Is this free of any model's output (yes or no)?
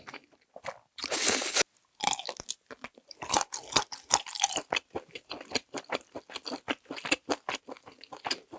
yes